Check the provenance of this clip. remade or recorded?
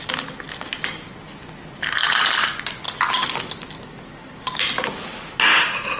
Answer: recorded